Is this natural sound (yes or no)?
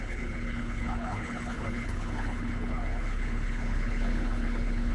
no